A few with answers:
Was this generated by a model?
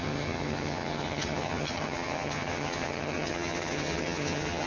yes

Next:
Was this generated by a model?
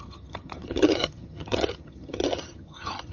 yes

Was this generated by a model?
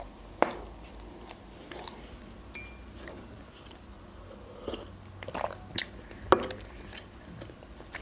no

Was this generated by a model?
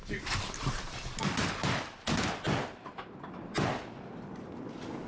no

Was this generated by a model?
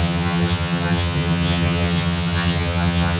yes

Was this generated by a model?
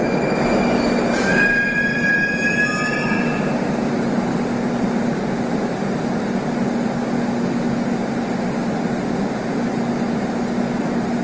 no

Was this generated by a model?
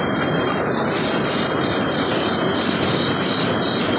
no